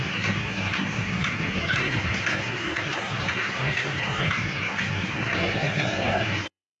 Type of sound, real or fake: fake